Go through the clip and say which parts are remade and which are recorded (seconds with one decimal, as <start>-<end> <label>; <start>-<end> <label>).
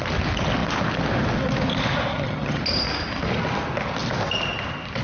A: 0.0-2.1 recorded; 2.1-2.6 remade; 2.6-5.0 recorded